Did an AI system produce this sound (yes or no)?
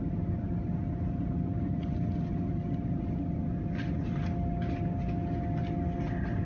no